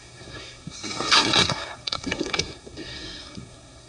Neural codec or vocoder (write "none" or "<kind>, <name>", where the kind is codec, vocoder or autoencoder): codec, SNAC